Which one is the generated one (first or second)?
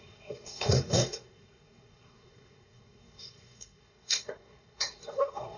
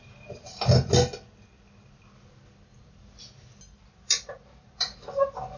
first